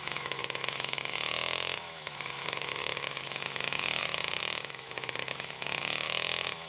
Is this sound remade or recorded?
remade